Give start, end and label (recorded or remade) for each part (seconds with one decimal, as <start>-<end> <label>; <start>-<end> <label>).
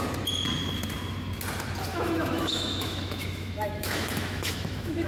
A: 0.0-1.9 recorded; 1.9-5.1 remade